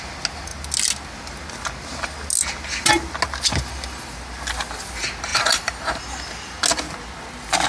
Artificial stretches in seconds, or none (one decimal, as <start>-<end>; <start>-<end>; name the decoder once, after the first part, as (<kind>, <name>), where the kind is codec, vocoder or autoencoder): 5.3-6.0 (vocoder, BigVGAN v2)